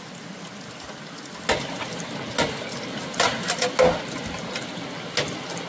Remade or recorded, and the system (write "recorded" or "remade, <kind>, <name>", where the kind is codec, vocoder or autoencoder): recorded